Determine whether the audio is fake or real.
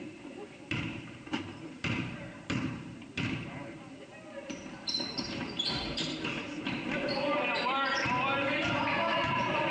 fake